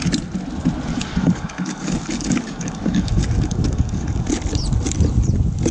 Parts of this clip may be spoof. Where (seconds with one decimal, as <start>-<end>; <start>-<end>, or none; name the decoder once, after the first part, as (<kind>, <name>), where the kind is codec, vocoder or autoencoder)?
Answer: 0.9-4.3 (codec, DAC)